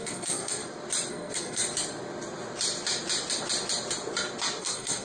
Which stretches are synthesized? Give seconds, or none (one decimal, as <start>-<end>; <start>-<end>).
0.0-0.6; 1.1-1.6; 4.6-5.0

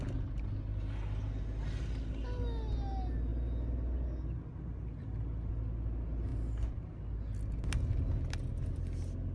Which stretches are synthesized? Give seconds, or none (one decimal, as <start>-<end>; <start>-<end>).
none

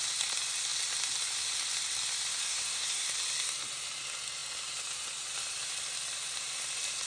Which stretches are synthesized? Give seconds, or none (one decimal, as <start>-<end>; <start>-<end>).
2.3-3.1

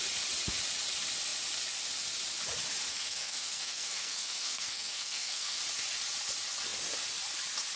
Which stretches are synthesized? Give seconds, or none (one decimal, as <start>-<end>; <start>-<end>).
2.9-5.6

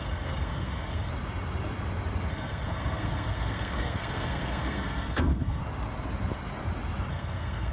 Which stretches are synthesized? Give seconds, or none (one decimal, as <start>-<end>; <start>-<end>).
0.0-1.1; 2.3-5.6; 7.1-7.7

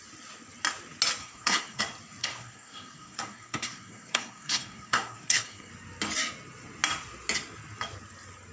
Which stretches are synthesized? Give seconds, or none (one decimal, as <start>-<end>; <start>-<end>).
1.2-1.8; 2.2-5.7